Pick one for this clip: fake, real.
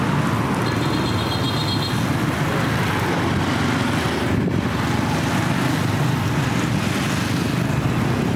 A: real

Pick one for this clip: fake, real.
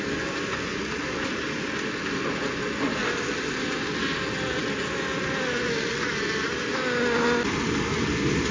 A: real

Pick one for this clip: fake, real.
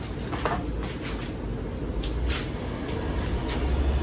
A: real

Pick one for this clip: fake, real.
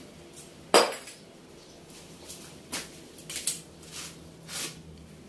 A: real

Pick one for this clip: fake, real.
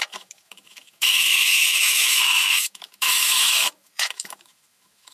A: fake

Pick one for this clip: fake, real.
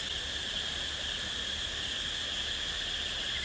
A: real